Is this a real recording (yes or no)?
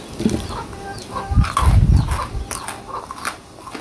yes